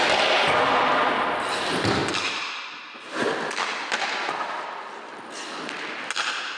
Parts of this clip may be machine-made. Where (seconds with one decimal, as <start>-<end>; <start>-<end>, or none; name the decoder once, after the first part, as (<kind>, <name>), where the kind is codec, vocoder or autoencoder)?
none